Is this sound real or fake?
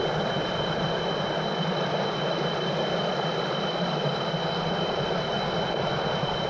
real